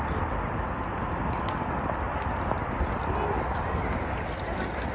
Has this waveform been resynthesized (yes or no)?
no